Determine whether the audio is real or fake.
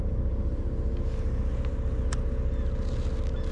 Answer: real